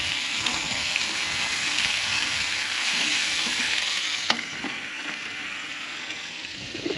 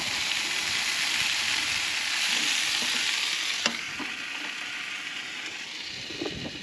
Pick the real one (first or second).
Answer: second